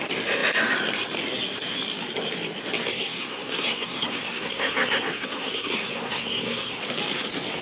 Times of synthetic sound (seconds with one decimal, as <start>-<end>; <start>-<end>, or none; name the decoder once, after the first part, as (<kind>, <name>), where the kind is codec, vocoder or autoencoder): 2.9-6.8 (codec, SNAC)